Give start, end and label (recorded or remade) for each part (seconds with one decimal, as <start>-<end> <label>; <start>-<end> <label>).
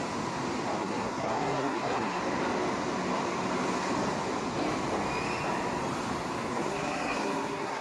0.0-0.8 recorded; 0.8-2.2 remade; 2.2-6.5 recorded; 6.5-7.8 remade